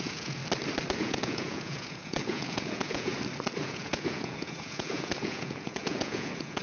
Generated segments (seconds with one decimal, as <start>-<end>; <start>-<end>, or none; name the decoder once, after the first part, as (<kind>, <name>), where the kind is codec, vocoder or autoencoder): 0.0-0.4 (vocoder, Vocos); 1.0-3.1; 3.6-6.6